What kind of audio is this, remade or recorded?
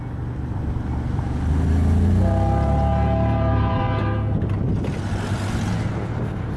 recorded